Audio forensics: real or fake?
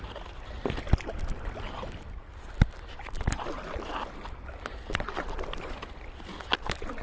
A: real